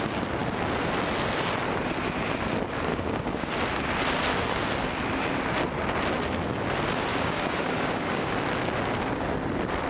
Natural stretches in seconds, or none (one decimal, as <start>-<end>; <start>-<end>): 0.0-2.9; 3.5-7.1; 8.3-9.9